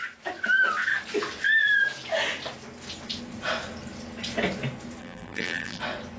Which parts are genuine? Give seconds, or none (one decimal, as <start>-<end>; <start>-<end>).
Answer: 0.0-5.0; 5.8-6.2